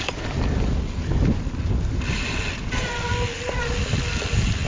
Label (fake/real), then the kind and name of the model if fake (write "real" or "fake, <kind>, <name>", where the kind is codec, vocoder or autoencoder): real